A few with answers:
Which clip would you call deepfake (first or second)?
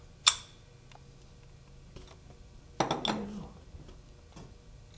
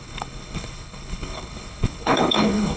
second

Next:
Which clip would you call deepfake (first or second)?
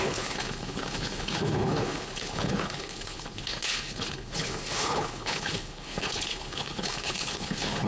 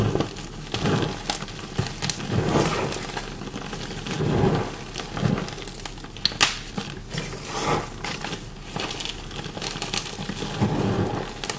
first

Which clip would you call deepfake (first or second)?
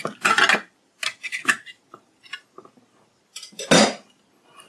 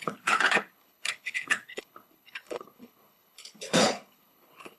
second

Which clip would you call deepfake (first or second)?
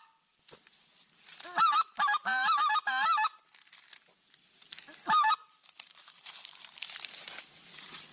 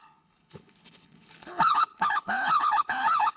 second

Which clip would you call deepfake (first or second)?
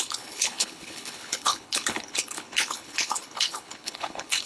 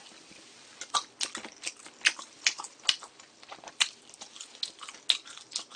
first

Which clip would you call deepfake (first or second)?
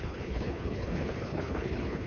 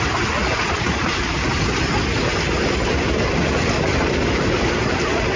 first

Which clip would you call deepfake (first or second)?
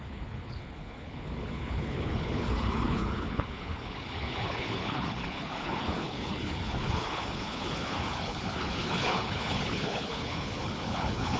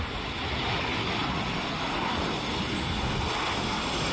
first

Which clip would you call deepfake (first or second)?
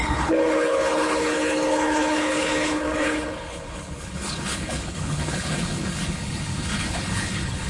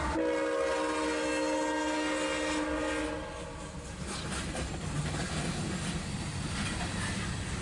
first